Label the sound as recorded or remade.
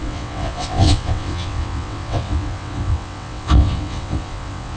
remade